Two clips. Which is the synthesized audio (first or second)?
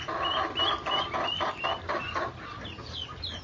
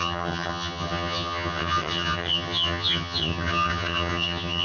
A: second